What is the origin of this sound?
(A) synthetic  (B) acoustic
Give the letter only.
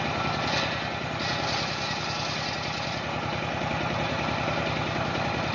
B